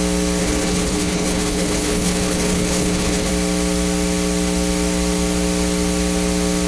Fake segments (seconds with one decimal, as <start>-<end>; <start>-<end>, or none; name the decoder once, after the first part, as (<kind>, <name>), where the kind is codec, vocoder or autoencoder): 0.4-3.3 (codec, HILCodec)